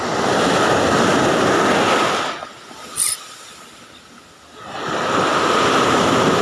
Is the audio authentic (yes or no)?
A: yes